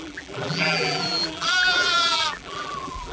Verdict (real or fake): fake